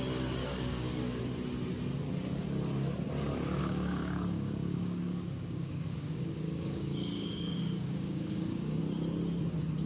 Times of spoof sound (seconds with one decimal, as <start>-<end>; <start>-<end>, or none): 0.4-1.2; 3.6-8.8

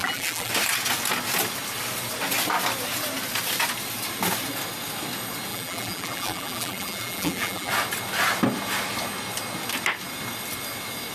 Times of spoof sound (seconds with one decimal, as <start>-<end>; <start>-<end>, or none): 0.0-0.5; 5.5-7.7

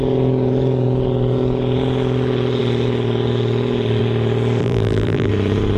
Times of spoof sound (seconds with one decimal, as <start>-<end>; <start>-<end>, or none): 4.6-5.3

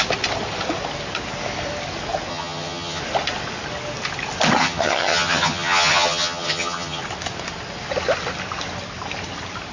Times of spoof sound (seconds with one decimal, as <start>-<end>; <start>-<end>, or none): 2.3-3.0; 4.6-7.0

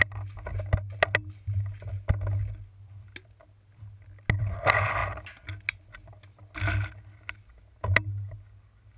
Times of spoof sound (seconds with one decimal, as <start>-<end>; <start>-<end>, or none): none

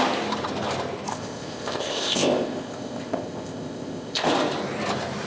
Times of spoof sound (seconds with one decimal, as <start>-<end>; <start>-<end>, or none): 1.1-4.3

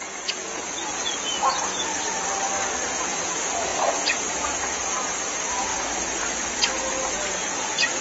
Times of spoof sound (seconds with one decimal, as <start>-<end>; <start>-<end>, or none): 0.0-1.9; 2.9-5.7; 7.1-8.0